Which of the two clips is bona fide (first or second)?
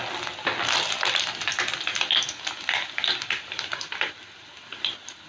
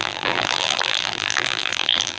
first